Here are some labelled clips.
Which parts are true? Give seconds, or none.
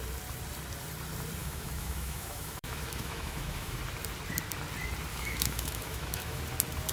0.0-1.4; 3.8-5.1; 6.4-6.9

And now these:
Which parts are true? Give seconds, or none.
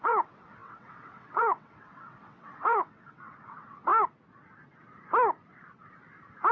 3.9-6.5